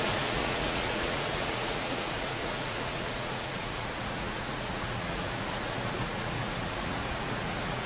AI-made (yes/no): yes